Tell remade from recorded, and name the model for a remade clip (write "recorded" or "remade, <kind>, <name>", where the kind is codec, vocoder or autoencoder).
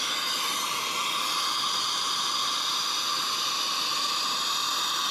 recorded